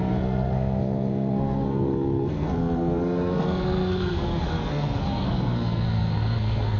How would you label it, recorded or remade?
remade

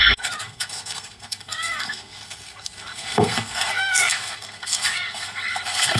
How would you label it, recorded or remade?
remade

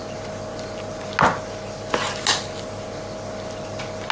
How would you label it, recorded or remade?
recorded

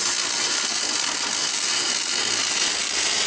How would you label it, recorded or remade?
recorded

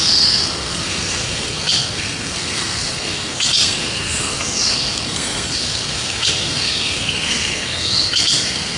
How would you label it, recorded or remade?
remade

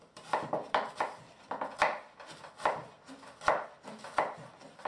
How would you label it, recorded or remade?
recorded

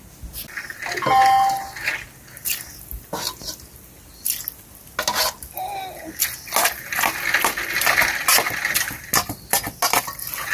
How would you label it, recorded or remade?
recorded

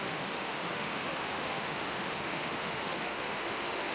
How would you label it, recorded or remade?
remade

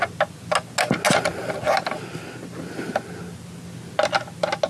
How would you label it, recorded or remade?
recorded